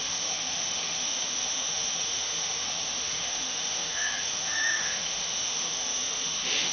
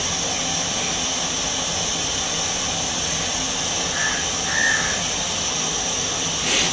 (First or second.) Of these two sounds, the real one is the second